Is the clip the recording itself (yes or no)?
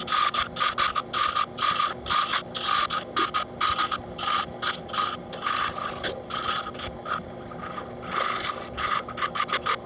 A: yes